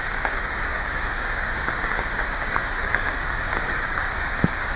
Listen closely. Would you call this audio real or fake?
fake